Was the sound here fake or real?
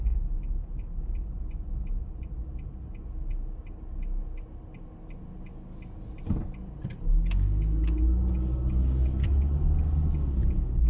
real